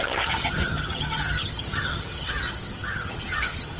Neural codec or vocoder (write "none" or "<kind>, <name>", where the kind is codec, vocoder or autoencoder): vocoder, HiFi-GAN